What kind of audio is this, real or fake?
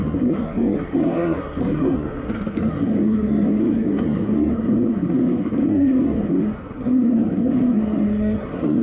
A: fake